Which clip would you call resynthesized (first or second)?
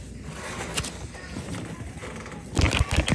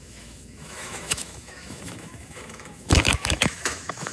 second